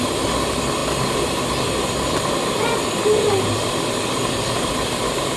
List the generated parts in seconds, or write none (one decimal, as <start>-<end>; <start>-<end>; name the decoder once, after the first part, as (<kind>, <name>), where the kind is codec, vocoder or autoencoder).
none